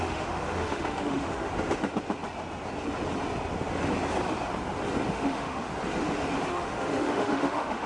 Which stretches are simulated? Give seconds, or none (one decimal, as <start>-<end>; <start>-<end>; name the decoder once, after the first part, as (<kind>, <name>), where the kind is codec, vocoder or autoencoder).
0.0-1.5 (autoencoder, DAC-VAE); 5.1-5.7; 6.5-7.9